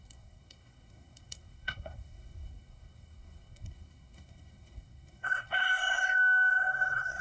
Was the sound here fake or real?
fake